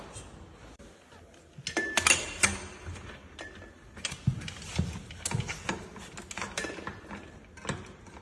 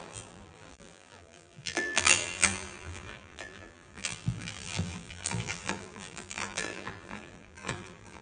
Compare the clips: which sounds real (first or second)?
first